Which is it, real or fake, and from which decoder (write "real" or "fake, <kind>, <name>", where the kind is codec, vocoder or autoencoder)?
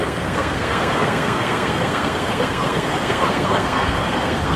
fake, codec, SNAC